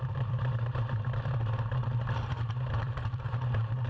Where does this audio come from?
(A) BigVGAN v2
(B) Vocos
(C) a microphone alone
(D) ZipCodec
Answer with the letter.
A